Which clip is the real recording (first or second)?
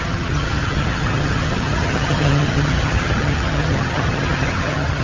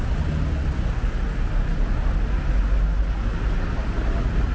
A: second